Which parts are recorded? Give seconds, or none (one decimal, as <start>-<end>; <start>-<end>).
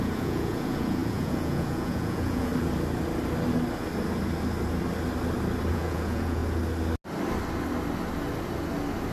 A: 2.5-5.7; 6.4-9.1